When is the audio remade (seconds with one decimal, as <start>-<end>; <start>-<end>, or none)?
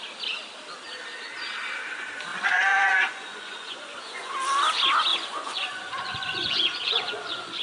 2.3-4.3; 5.1-7.6